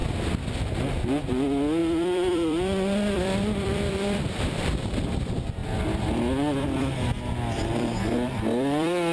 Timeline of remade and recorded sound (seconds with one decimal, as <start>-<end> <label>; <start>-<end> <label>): 0.0-1.3 recorded; 1.3-5.6 remade; 5.6-6.6 recorded; 6.6-9.1 remade